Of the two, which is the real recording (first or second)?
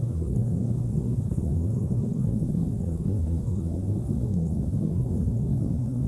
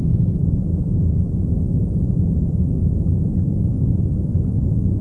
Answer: second